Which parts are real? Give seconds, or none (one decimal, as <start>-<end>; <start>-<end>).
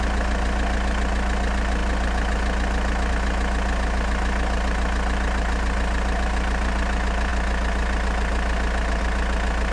0.0-9.7